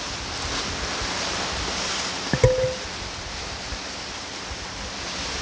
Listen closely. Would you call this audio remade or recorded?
recorded